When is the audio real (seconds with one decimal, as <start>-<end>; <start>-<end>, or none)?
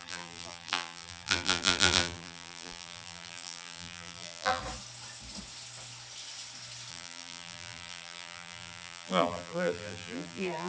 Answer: 4.6-6.9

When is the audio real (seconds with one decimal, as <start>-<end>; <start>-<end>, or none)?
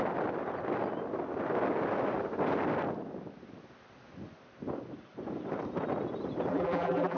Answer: 0.0-6.5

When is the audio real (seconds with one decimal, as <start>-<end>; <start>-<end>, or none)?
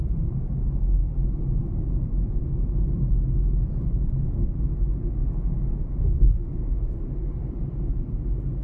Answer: 0.6-1.0; 3.2-8.6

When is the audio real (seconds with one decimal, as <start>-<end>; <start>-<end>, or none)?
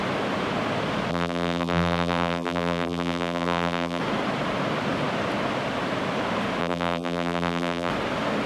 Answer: 0.0-1.1; 4.0-6.6; 7.9-8.5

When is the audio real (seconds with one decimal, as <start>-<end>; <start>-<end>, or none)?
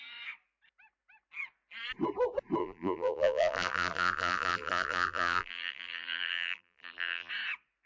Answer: 0.0-2.6; 7.3-7.9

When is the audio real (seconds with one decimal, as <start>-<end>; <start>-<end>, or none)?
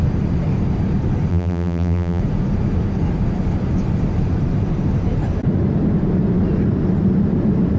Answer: 0.0-1.3; 2.2-7.8